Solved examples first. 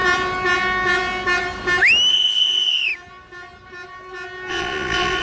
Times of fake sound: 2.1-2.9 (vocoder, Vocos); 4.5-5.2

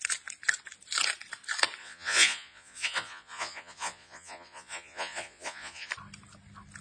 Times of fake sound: 1.8-5.9 (vocoder, Vocos)

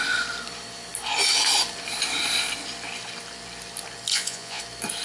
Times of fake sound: 4.1-4.6 (vocoder, Vocos)